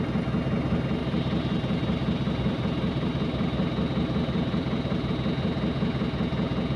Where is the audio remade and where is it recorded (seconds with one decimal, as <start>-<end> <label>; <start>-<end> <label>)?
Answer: 0.0-1.0 recorded; 1.0-5.1 remade; 5.1-6.8 recorded